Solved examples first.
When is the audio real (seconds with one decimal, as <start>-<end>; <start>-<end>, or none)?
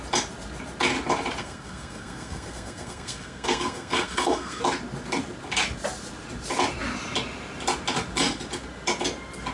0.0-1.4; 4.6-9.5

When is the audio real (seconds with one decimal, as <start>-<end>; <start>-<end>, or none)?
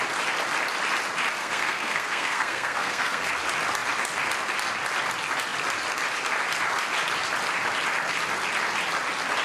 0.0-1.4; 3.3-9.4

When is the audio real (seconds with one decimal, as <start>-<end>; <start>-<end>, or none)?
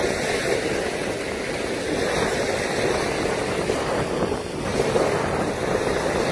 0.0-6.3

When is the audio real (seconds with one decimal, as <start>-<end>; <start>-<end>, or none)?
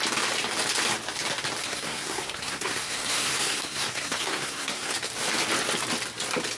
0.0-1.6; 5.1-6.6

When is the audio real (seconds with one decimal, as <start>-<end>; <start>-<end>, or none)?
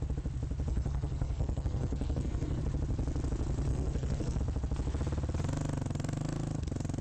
0.0-0.7; 2.6-3.7; 4.4-7.0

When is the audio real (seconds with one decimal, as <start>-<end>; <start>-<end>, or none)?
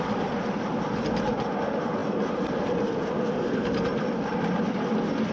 0.0-5.3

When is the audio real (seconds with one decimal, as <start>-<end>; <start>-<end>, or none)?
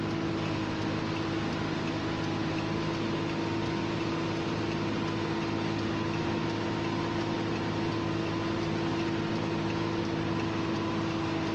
0.0-11.5